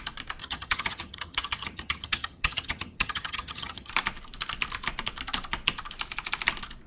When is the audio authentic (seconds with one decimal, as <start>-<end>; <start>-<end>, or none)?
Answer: 0.0-0.4; 3.9-6.9